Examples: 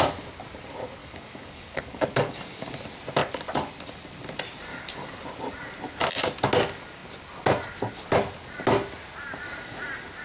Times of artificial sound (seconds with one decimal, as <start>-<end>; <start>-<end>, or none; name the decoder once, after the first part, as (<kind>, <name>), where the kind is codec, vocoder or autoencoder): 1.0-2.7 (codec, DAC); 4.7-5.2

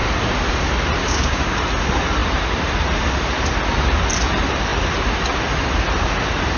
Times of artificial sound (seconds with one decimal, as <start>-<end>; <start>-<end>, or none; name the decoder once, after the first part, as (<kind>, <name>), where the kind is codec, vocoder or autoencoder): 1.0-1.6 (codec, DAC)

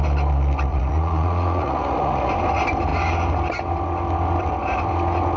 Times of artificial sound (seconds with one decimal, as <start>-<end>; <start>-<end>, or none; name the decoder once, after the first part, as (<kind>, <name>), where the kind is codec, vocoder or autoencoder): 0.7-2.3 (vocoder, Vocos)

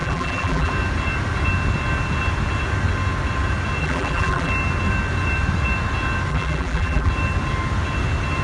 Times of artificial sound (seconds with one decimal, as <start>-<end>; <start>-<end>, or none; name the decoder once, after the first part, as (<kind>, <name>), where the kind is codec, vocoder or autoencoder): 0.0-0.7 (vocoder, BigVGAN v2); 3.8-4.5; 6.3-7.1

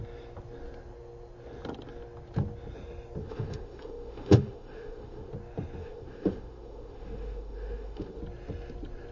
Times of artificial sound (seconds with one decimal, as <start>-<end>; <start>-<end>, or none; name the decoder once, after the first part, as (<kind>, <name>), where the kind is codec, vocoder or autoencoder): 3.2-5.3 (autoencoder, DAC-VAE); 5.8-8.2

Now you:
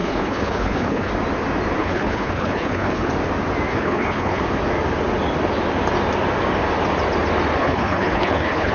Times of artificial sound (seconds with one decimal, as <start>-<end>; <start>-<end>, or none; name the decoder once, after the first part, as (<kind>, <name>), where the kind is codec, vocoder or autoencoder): 0.0-1.1 (codec, HILCodec); 1.8-3.1; 3.7-4.4; 7.6-8.7

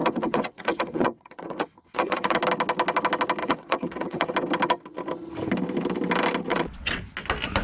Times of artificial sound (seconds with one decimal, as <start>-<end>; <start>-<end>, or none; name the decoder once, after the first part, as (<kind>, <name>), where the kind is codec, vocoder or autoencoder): 0.0-2.4 (vocoder, WaveNeXt); 3.4-4.3; 6.5-7.0

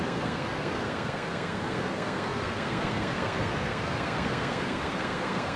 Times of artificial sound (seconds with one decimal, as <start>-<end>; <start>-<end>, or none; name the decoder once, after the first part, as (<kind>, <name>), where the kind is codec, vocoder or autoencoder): 0.0-5.6 (codec, SNAC)